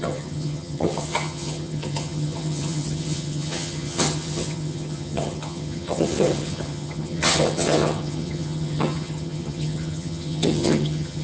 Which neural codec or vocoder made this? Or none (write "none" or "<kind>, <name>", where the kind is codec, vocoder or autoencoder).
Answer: vocoder, HiFi-GAN